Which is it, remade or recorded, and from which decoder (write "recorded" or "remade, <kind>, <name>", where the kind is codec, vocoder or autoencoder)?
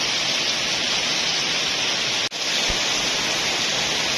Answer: recorded